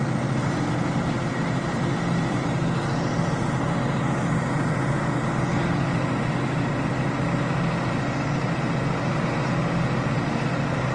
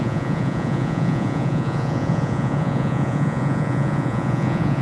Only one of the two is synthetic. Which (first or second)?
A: second